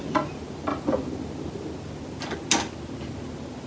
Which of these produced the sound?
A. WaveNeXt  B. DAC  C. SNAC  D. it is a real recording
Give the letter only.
D